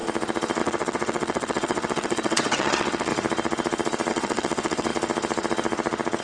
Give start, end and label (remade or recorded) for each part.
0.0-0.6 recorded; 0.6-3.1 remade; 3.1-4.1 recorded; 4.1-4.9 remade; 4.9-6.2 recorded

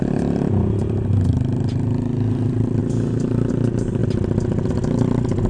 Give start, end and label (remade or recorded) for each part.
0.0-5.5 recorded

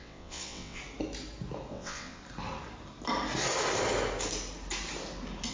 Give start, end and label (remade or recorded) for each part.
0.0-0.8 remade; 0.8-1.7 recorded; 1.7-2.2 remade; 2.2-5.5 recorded

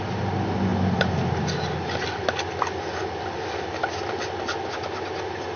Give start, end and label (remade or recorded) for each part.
0.0-5.6 recorded

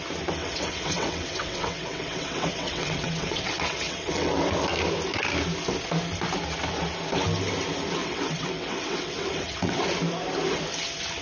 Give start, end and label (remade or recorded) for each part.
0.0-0.4 recorded; 0.4-4.3 remade; 4.3-8.0 recorded; 8.0-9.8 remade; 9.8-11.2 recorded

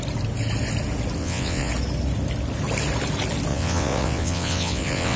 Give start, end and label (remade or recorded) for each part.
0.0-1.2 recorded; 1.2-1.7 remade; 1.7-3.5 recorded; 3.5-5.2 remade

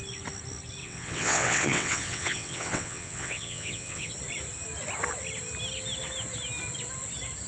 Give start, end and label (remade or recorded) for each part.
0.0-0.8 recorded; 0.8-4.1 remade; 4.1-7.5 recorded